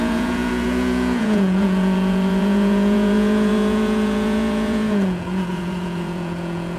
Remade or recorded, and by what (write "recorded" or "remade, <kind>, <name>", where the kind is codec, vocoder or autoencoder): remade, vocoder, Vocos